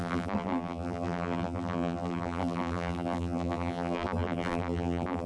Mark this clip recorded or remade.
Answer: remade